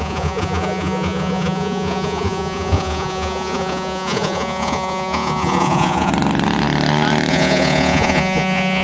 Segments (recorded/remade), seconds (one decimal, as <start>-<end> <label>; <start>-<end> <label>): 0.0-6.1 remade; 6.1-7.3 recorded; 7.3-8.8 remade